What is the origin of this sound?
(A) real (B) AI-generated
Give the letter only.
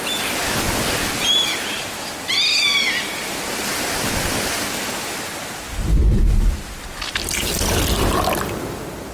A